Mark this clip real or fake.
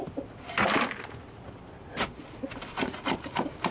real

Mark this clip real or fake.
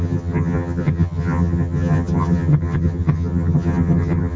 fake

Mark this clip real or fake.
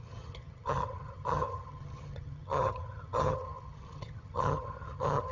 fake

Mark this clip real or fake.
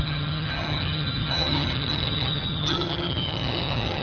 fake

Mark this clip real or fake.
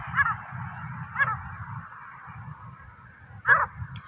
real